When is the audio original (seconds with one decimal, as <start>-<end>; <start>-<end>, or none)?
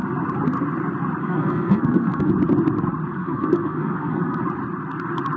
0.0-1.2; 2.3-3.2; 4.4-5.4